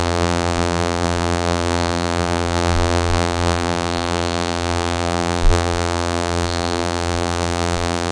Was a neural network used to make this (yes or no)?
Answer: yes